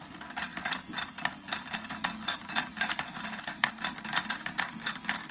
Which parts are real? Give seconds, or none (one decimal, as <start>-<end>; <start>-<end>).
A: 0.0-5.3